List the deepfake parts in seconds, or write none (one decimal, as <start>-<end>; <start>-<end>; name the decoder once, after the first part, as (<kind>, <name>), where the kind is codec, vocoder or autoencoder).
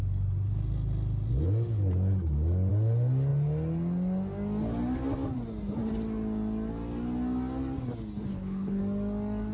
8.3-8.8 (codec, HILCodec)